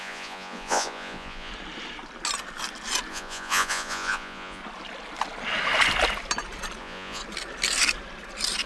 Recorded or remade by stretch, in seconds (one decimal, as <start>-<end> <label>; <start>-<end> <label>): 0.0-1.5 remade; 1.5-3.1 recorded; 3.1-4.6 remade; 4.6-6.8 recorded; 6.8-7.2 remade; 7.2-8.7 recorded